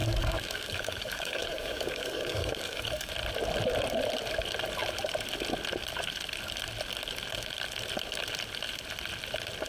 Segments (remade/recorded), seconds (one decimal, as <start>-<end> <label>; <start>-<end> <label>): 0.0-3.1 remade; 3.1-9.7 recorded